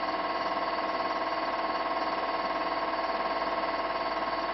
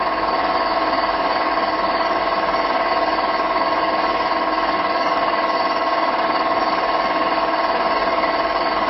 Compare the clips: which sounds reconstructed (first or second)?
second